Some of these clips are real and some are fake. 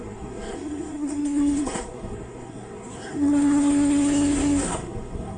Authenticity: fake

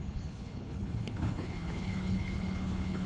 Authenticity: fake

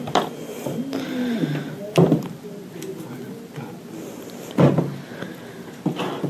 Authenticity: real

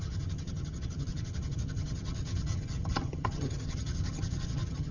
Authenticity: fake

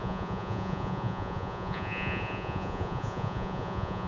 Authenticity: fake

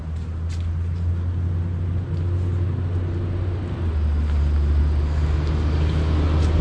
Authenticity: real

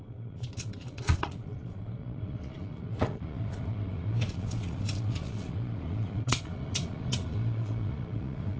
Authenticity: fake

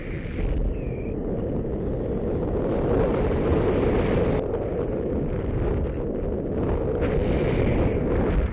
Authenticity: real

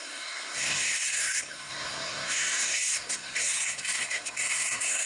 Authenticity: fake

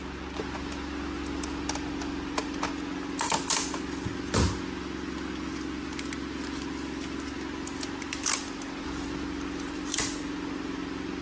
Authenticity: real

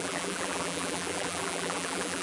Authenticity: fake